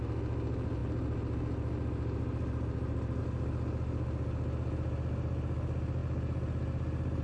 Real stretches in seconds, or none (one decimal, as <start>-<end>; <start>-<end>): 0.0-7.2